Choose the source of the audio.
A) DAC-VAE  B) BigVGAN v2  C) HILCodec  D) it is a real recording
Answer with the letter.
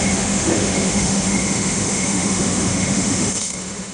A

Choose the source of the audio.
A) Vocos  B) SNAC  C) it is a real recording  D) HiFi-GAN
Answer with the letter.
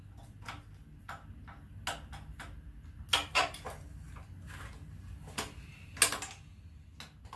C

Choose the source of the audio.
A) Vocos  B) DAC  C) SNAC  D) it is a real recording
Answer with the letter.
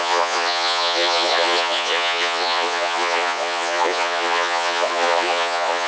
A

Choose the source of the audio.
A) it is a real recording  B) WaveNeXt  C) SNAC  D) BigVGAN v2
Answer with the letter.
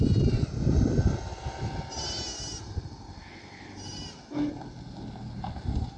A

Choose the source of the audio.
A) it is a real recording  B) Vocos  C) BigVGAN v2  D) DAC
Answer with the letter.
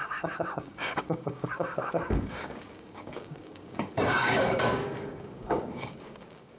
D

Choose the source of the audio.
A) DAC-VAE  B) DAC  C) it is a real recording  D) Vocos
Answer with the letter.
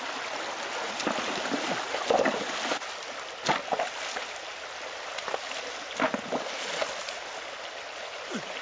C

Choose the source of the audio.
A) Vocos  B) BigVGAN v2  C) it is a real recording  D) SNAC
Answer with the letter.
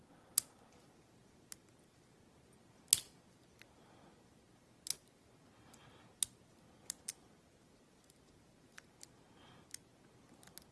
C